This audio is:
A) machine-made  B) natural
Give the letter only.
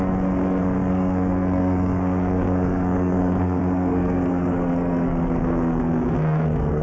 A